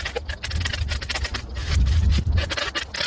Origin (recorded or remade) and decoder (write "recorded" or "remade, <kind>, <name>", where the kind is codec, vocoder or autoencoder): recorded